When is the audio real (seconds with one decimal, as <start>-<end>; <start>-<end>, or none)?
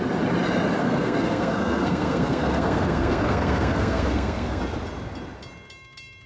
0.0-0.8; 4.6-6.3